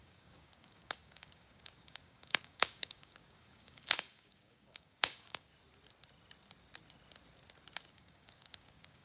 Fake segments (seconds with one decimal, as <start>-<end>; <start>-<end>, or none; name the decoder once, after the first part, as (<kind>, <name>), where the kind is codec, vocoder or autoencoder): 0.0-5.5 (codec, DAC); 7.9-9.0